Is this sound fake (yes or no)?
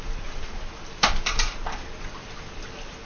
no